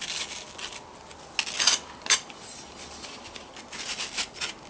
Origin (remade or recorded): recorded